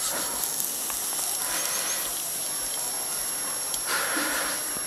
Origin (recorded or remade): recorded